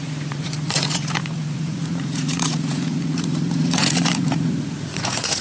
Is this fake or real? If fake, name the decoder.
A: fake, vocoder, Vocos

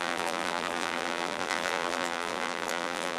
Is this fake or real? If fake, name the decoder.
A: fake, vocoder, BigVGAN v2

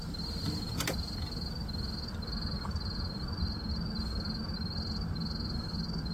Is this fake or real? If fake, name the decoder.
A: real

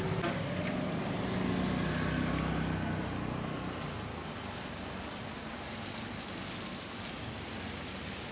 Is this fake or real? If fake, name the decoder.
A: real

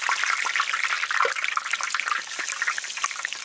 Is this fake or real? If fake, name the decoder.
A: real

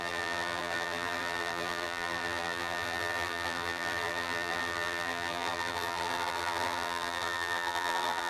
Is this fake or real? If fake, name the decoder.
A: fake, vocoder, BigVGAN v2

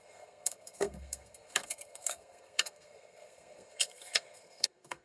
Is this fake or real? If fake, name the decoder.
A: fake, codec, SNAC